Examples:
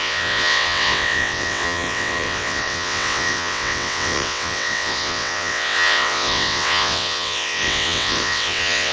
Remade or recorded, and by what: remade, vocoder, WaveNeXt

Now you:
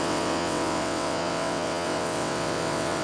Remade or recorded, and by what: remade, vocoder, WaveNeXt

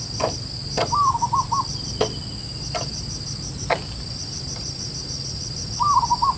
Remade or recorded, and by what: recorded